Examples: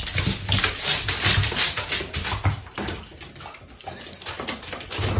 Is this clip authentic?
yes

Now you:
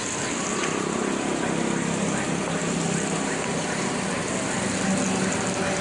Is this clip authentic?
yes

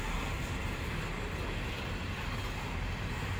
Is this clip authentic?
yes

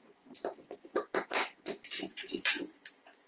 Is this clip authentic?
no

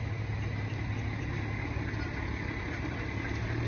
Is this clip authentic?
yes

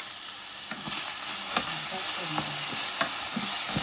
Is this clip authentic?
yes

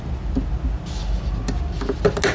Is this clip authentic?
yes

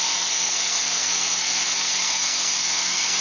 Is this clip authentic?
no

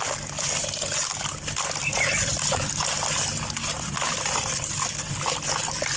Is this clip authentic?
yes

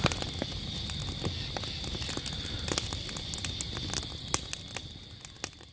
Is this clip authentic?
yes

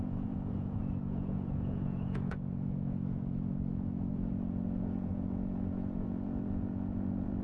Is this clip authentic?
no